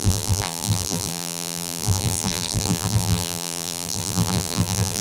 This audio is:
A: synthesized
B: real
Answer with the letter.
A